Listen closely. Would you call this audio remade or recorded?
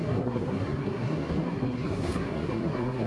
remade